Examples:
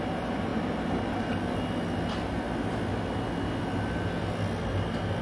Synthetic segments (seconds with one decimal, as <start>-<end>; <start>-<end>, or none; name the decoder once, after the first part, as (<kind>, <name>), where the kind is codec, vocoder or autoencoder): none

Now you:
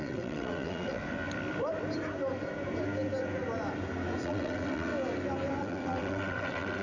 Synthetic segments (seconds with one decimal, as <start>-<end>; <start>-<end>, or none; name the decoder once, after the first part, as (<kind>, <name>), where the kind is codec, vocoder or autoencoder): 0.0-1.0 (vocoder, WaveNeXt); 4.2-4.9; 5.6-6.8

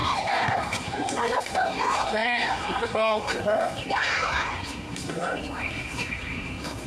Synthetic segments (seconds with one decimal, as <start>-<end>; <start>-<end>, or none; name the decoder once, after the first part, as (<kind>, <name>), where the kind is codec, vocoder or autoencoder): 0.0-6.9 (codec, SNAC)

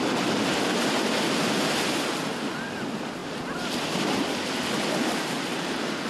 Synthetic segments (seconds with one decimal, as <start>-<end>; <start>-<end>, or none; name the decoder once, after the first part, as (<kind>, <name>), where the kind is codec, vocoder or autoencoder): none

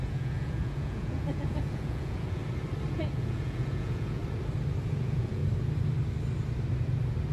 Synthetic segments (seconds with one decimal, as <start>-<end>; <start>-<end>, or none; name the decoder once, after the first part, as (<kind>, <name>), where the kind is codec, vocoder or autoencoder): 0.0-2.4 (vocoder, Vocos); 2.9-4.2; 4.9-5.4